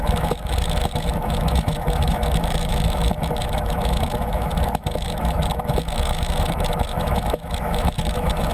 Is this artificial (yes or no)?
yes